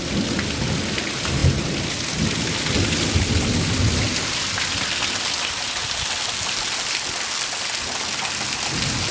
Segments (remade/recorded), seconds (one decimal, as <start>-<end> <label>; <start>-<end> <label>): 0.0-9.1 recorded